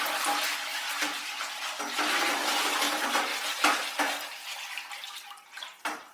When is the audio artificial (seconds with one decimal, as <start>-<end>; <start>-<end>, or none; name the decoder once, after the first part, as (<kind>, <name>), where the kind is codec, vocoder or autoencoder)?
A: none

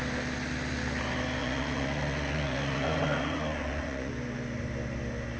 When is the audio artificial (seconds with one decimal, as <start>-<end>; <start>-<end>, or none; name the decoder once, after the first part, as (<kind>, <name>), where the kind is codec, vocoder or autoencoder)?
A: 1.4-4.1 (vocoder, Vocos)

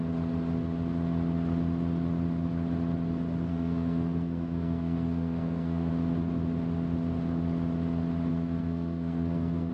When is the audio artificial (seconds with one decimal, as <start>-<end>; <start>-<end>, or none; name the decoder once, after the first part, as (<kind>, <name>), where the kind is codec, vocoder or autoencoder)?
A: 3.5-5.9 (codec, SNAC); 8.3-9.7

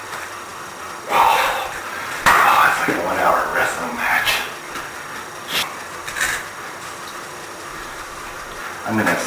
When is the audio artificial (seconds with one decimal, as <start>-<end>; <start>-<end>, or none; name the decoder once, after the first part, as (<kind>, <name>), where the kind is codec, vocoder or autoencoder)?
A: 7.7-8.6 (vocoder, BigVGAN v2)